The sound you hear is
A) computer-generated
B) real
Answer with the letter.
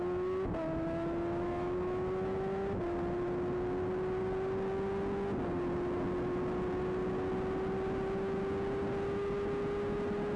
B